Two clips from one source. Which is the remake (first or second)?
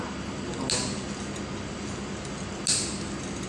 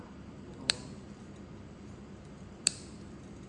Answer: second